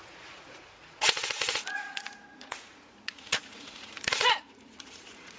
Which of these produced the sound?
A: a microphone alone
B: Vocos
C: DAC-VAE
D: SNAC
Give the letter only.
B